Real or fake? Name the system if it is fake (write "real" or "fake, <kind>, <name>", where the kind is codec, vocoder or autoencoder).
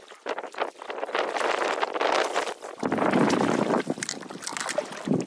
real